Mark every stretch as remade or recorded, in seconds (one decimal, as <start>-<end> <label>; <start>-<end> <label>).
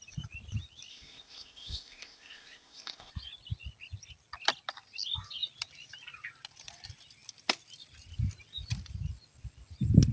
0.0-0.9 recorded; 0.9-3.1 remade; 3.1-10.1 recorded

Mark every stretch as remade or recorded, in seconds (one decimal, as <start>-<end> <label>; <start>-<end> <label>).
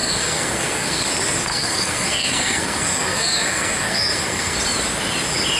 0.0-1.0 remade; 1.0-1.5 recorded; 1.5-4.6 remade; 4.6-5.6 recorded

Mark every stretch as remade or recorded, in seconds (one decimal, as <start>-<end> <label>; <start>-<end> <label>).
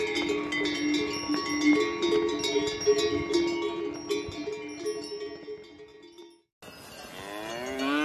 0.0-8.0 recorded